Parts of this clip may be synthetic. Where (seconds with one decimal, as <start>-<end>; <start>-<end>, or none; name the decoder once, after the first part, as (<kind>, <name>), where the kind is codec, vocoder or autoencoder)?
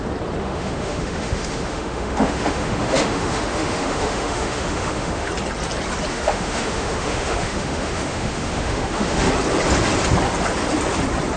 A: 0.4-5.3 (autoencoder, DAC-VAE); 6.1-9.3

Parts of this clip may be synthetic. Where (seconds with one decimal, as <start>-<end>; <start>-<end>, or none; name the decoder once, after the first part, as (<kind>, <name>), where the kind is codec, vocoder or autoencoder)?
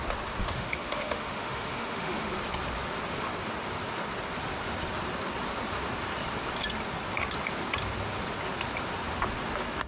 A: 0.4-2.3 (autoencoder, DAC-VAE)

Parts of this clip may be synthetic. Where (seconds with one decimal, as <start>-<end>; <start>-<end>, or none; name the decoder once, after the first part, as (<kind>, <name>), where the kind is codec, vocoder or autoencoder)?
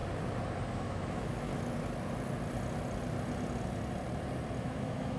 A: 0.7-1.5 (autoencoder, DAC-VAE); 4.6-5.2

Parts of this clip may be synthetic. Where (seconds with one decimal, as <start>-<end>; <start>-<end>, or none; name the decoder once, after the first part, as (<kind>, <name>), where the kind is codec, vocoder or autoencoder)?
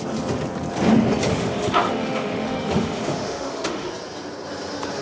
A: 1.3-3.9 (autoencoder, DAC-VAE)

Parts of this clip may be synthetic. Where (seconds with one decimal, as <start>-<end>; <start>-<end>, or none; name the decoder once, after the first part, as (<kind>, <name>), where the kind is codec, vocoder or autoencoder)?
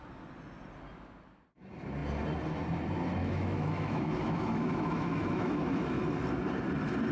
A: 3.2-6.0 (autoencoder, DAC-VAE)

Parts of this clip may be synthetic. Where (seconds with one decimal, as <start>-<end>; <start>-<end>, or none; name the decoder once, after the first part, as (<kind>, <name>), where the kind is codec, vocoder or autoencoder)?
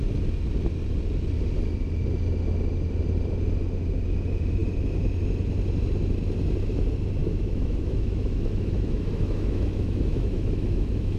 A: 7.2-11.2 (autoencoder, DAC-VAE)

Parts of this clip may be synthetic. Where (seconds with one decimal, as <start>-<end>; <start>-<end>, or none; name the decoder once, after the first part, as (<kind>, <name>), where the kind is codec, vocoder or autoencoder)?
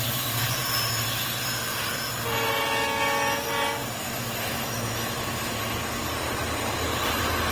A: 4.0-5.6 (autoencoder, DAC-VAE)